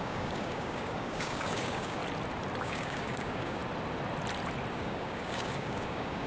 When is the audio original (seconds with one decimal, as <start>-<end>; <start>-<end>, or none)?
2.0-2.6; 3.6-4.7